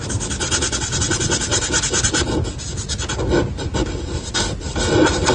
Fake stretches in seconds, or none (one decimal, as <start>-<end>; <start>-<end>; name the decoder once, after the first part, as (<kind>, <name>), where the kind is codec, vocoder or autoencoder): none